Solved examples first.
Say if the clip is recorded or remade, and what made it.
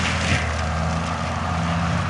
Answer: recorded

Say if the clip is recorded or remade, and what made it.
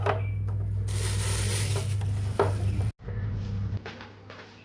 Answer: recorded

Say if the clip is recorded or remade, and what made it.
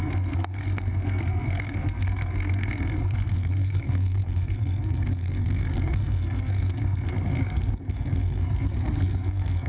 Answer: remade, codec, SNAC